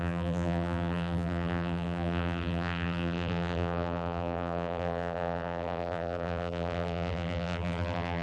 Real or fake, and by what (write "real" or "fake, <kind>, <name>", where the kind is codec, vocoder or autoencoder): fake, vocoder, BigVGAN v2